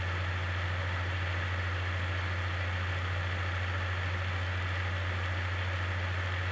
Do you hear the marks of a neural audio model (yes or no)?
no